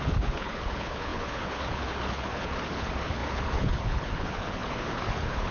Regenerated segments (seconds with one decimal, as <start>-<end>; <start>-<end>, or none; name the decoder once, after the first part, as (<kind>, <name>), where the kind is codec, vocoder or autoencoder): 0.0-5.5 (codec, HILCodec)